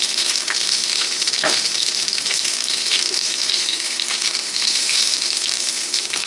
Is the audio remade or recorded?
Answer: remade